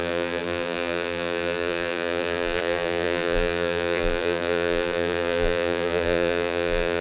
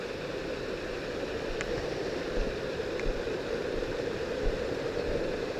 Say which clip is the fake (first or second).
first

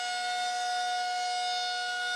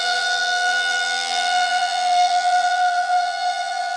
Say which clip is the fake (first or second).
second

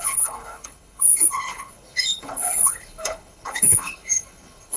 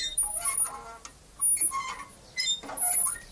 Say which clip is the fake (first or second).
first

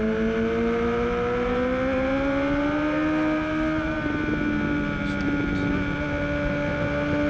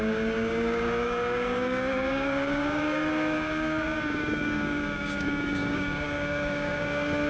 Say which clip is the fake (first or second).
second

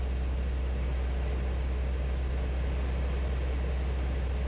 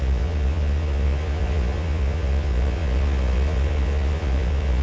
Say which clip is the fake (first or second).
second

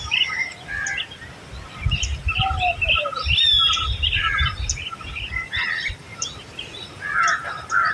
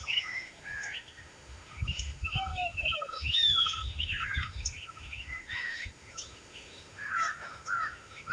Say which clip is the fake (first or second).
second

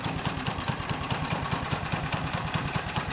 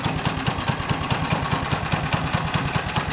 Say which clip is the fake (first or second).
first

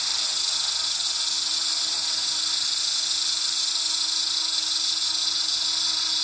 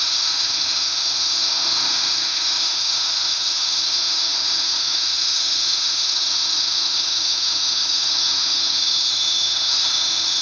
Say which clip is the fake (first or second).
second